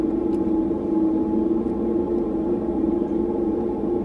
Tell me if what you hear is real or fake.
real